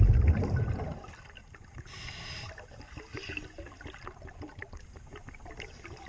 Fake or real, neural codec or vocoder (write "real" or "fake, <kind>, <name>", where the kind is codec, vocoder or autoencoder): real